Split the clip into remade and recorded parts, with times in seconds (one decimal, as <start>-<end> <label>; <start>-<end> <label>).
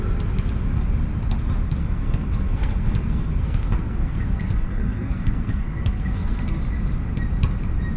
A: 0.0-1.8 recorded; 1.8-6.6 remade; 6.6-8.0 recorded